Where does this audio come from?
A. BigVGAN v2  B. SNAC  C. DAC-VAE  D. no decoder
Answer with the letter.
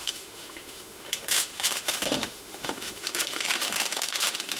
C